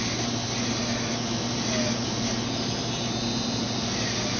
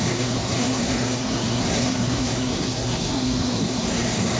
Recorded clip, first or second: first